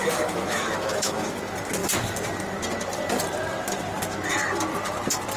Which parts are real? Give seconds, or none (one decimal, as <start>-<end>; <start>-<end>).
1.4-5.4